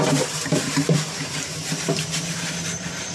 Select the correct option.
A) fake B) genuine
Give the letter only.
A